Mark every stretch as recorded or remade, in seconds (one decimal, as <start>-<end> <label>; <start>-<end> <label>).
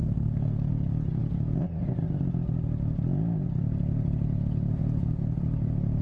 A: 0.0-0.7 remade; 0.7-6.0 recorded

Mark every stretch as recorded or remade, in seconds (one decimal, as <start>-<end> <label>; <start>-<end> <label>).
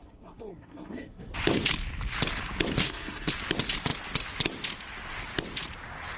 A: 0.0-1.3 remade; 1.3-2.8 recorded; 2.8-3.3 remade; 3.3-6.2 recorded